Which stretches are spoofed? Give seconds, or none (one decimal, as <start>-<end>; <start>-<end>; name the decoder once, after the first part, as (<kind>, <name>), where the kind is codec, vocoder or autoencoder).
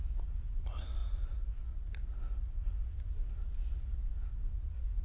none